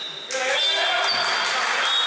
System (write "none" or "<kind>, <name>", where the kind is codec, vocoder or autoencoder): none